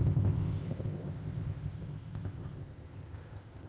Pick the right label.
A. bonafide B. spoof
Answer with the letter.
B